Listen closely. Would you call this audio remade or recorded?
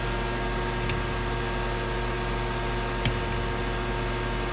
recorded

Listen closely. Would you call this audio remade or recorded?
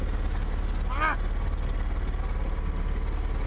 recorded